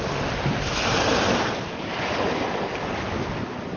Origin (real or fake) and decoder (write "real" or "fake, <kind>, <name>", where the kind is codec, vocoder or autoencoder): real